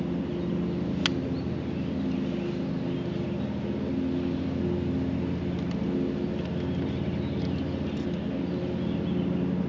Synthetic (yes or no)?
no